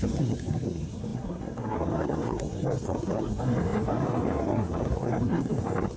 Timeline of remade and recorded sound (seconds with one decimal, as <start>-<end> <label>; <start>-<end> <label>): 0.0-6.0 remade